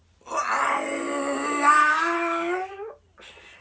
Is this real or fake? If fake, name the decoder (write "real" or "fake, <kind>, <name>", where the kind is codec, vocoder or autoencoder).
real